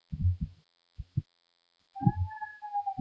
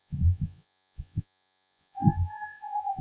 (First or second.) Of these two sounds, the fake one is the second